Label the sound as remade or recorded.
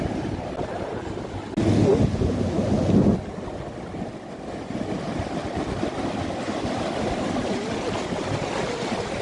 recorded